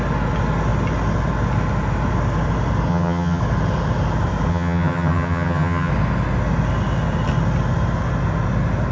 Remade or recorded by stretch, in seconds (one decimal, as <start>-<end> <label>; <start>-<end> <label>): 0.0-2.9 recorded; 2.9-3.4 remade; 3.4-4.5 recorded; 4.5-5.9 remade; 5.9-8.9 recorded